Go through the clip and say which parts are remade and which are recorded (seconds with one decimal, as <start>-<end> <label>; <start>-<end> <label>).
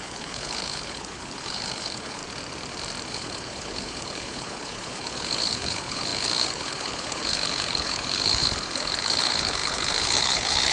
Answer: 0.0-2.2 remade; 2.2-3.1 recorded; 3.1-10.7 remade